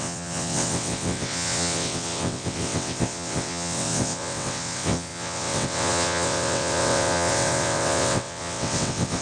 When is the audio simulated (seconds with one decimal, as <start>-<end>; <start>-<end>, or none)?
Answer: 0.0-9.2